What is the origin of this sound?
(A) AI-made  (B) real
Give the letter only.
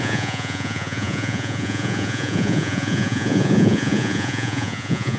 A